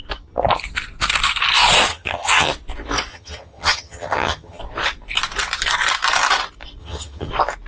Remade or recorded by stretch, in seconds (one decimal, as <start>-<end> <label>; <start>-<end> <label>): 0.0-1.9 recorded; 1.9-2.5 remade; 2.5-3.1 recorded; 3.1-4.6 remade; 4.6-6.8 recorded; 6.8-7.3 remade; 7.3-7.7 recorded